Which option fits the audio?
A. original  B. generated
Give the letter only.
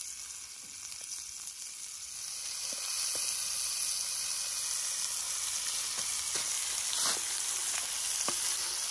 A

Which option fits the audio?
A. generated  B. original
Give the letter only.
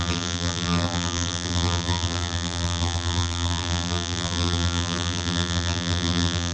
A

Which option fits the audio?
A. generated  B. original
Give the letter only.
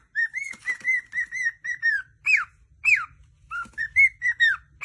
B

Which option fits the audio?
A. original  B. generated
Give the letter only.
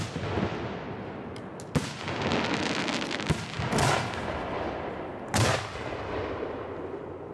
A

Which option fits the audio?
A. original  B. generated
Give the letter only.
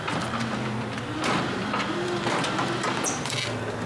A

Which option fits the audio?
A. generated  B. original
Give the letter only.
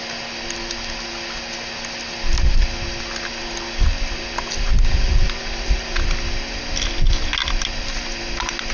B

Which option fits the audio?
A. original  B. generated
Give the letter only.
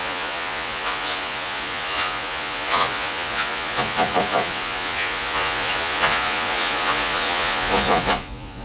B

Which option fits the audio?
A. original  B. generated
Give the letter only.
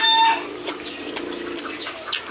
B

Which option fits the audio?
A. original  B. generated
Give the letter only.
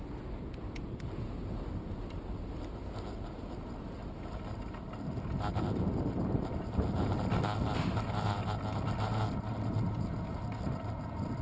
A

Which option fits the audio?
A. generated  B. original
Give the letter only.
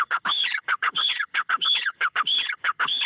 A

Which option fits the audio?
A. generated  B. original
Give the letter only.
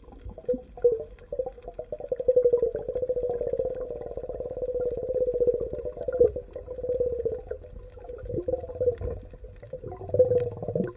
B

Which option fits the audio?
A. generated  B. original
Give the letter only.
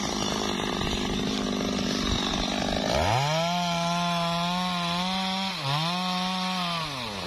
B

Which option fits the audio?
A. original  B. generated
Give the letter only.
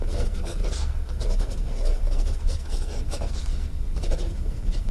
B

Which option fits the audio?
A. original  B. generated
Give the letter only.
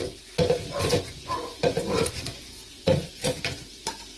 B